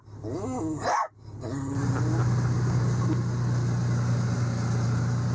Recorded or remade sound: recorded